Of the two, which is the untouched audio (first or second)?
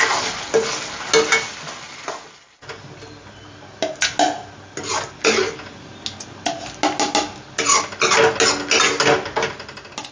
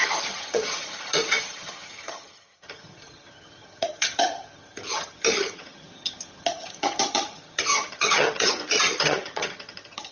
first